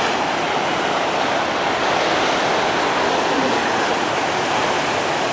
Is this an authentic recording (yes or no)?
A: yes